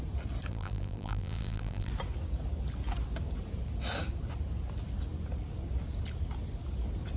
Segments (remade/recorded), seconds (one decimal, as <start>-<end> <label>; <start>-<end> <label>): 0.0-0.5 recorded; 0.5-1.9 remade; 1.9-7.2 recorded

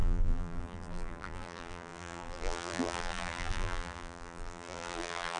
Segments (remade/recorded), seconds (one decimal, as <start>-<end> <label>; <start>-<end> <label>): 0.0-5.4 remade

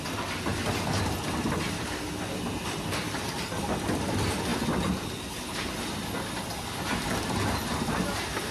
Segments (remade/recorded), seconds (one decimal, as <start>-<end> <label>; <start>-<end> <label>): 0.0-8.5 recorded